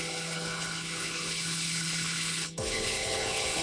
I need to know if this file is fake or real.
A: fake